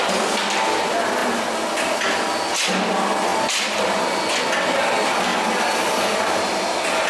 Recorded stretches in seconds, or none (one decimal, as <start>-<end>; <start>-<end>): 0.0-7.1